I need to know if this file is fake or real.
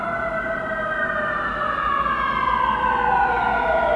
real